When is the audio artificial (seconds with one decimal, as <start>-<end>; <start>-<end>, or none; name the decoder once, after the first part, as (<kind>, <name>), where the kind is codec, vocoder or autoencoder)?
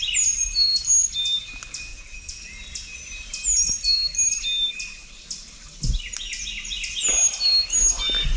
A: 1.9-2.4 (vocoder, Vocos)